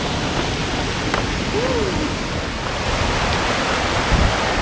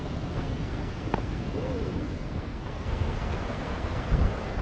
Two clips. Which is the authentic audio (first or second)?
first